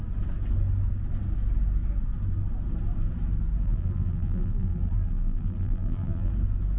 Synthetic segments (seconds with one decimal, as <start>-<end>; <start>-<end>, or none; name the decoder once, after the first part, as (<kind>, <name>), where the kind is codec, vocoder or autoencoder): 3.6-6.3 (vocoder, BigVGAN v2)